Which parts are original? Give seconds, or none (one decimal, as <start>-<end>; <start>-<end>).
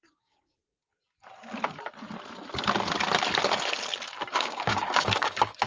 0.9-4.3